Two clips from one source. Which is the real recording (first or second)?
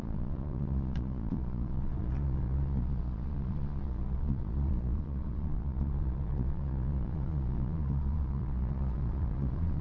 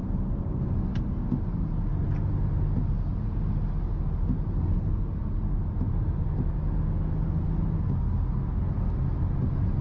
second